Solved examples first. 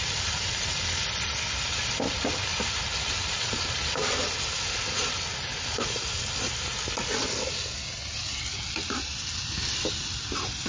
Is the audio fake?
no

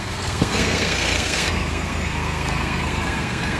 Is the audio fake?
yes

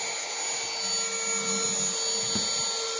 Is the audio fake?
no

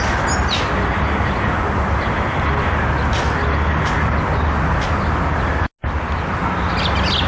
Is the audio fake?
no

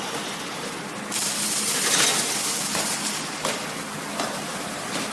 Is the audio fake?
no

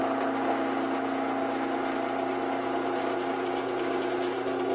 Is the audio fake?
no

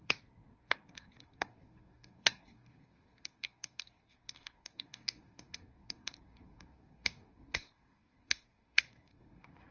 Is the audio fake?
yes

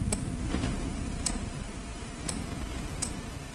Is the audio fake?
no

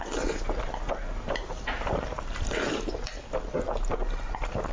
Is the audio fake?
no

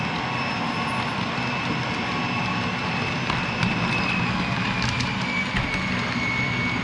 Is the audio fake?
no